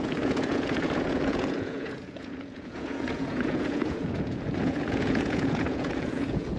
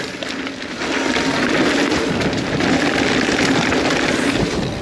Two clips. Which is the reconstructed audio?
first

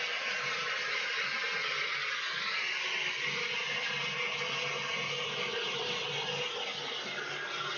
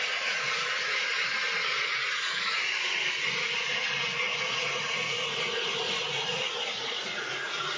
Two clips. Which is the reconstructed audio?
second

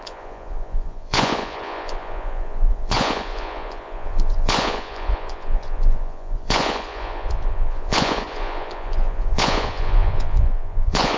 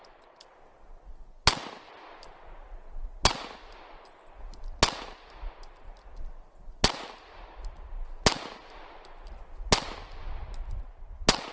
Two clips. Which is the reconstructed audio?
first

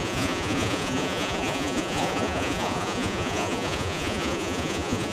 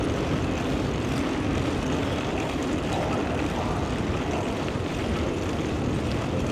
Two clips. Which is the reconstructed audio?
first